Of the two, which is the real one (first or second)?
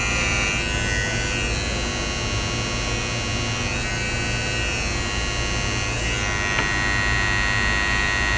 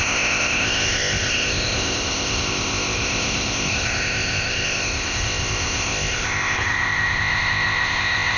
first